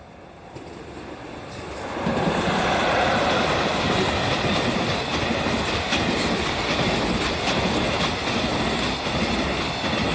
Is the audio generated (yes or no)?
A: no